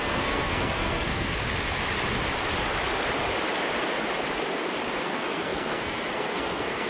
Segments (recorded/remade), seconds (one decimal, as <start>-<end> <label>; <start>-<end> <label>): 0.0-1.3 remade; 1.3-5.0 recorded; 5.0-6.9 remade